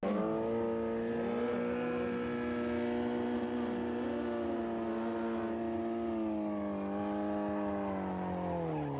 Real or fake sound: real